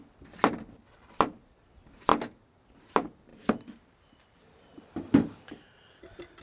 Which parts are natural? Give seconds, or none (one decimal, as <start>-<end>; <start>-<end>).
0.0-3.3; 4.8-6.4